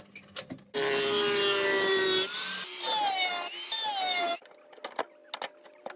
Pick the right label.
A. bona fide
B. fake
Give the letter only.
A